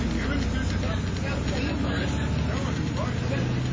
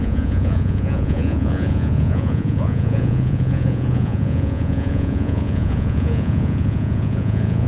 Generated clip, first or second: second